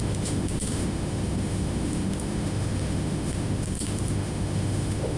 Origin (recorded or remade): remade